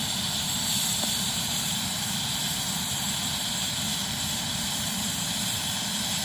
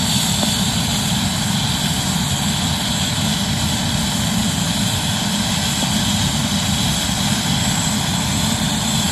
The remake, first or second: first